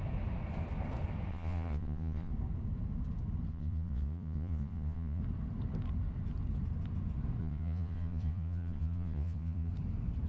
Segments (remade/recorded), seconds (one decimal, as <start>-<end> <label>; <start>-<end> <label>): 0.0-1.3 recorded; 1.3-2.3 remade; 2.3-3.5 recorded; 3.5-5.2 remade; 5.2-7.4 recorded; 7.4-9.7 remade; 9.7-10.3 recorded